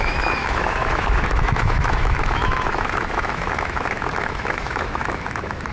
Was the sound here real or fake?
fake